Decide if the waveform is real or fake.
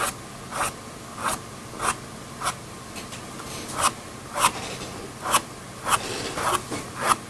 real